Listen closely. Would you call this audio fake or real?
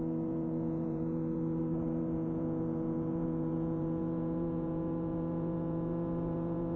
fake